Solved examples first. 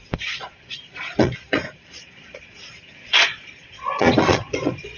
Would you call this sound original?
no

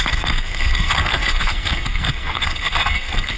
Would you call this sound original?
no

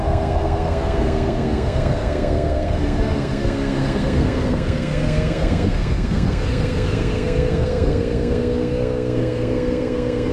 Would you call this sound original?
no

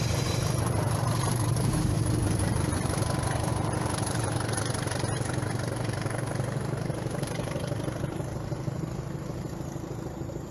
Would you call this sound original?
no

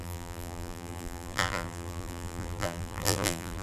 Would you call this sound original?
no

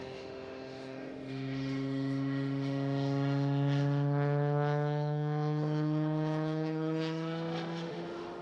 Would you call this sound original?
no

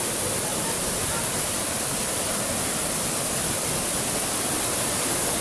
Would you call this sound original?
yes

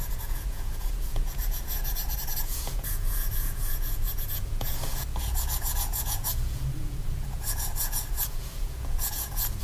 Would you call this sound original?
no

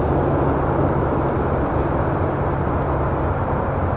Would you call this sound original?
yes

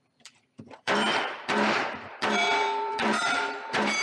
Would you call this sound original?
no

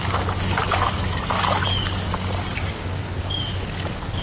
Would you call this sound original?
no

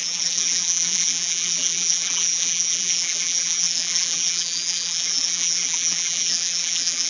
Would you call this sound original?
no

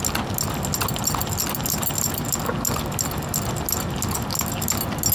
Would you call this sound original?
yes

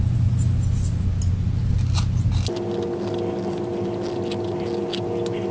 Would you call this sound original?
yes